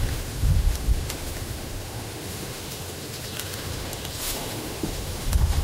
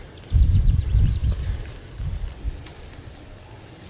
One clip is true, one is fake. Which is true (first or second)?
second